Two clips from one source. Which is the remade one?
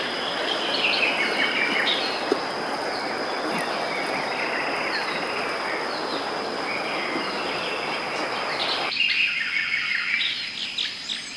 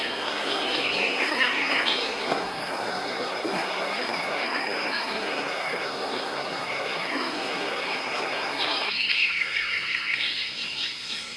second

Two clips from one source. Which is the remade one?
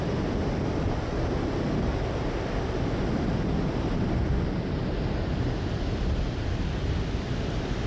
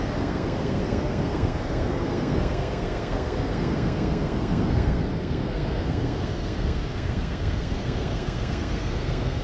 second